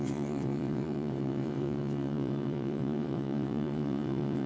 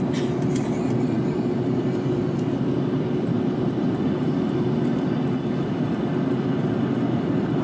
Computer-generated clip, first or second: first